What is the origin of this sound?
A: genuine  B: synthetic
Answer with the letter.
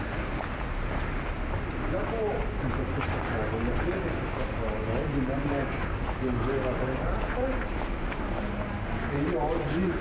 A